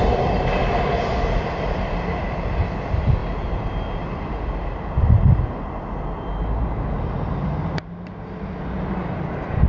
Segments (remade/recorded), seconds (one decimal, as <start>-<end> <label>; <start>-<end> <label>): 0.0-3.2 remade; 3.2-7.7 recorded; 7.7-9.7 remade